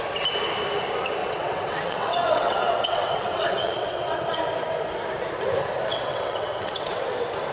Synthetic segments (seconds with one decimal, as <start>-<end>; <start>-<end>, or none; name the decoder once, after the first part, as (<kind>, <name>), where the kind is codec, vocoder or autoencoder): 1.2-4.4 (vocoder, WaveNeXt); 5.9-7.0